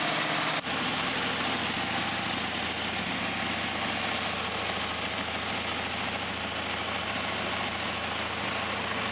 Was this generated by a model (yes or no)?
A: no